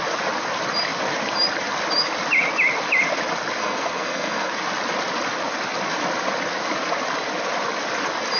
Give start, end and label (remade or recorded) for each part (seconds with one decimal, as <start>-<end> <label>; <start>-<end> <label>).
0.0-3.6 recorded; 3.6-4.5 remade; 4.5-8.4 recorded